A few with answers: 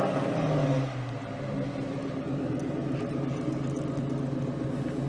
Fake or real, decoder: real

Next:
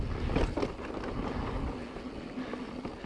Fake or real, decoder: real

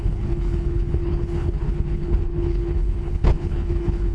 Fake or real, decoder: fake, codec, HILCodec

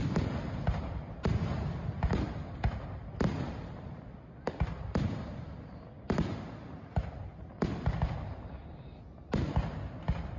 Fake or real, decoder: real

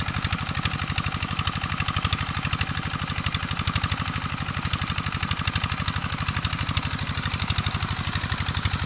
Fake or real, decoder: real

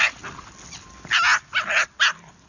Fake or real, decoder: real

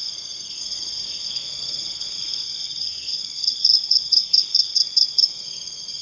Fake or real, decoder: fake, codec, SNAC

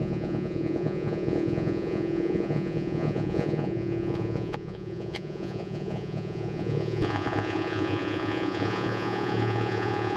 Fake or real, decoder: fake, vocoder, Vocos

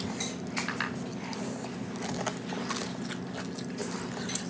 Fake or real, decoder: real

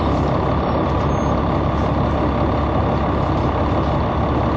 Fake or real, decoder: real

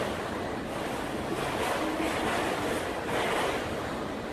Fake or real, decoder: real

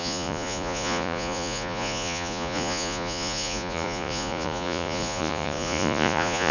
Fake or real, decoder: fake, vocoder, Vocos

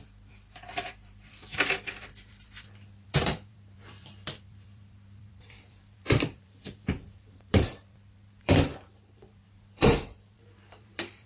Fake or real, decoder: fake, vocoder, BigVGAN v2